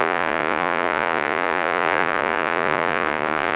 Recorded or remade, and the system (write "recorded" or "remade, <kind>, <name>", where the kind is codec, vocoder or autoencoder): remade, vocoder, Vocos